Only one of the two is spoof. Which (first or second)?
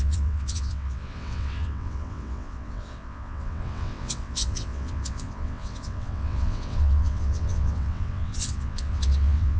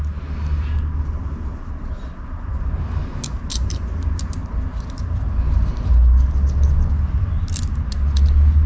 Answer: first